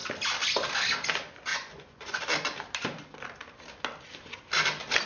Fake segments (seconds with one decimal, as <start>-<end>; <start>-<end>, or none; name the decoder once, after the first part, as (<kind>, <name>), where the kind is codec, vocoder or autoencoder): 1.5-2.2 (vocoder, Vocos)